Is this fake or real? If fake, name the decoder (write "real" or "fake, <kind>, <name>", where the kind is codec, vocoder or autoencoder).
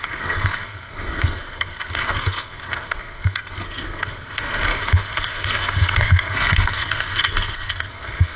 fake, codec, SNAC